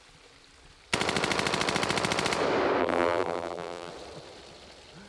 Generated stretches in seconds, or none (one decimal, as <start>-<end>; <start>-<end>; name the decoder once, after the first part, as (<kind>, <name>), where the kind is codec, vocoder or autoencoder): 2.8-3.9 (vocoder, BigVGAN v2)